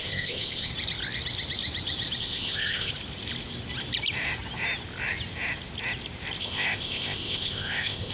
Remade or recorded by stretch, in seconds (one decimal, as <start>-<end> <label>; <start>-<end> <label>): 0.0-0.7 remade; 0.7-2.2 recorded; 2.2-2.9 remade; 2.9-6.4 recorded; 6.4-8.1 remade